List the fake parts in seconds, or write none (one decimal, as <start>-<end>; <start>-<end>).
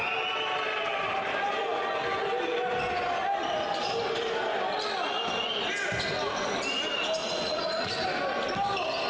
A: 7.2-7.9